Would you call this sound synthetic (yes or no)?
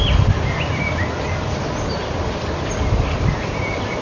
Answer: no